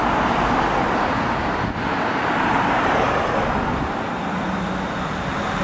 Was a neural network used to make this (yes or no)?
no